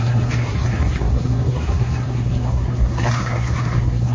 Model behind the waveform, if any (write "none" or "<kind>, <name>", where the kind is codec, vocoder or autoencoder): codec, SNAC